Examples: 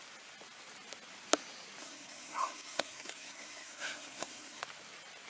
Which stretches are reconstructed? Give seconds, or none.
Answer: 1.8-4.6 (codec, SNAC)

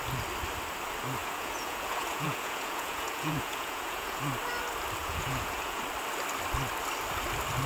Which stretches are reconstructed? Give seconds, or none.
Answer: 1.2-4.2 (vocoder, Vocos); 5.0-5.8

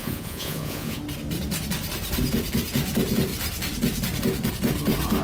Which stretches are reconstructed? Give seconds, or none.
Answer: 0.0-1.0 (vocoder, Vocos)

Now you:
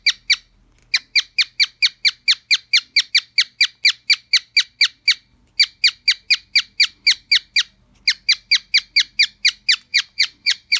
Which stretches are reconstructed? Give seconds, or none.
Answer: 9.9-10.8 (vocoder, Vocos)